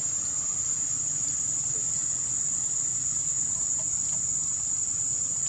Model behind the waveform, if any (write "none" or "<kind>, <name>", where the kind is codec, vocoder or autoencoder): none